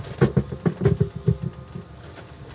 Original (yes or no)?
yes